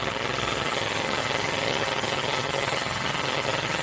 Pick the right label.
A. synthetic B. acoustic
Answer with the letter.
A